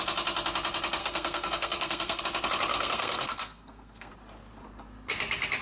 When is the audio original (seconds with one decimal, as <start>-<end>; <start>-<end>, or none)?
0.0-1.0; 2.2-2.7; 4.1-5.6